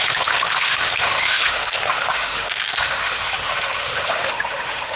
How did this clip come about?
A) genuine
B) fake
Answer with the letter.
B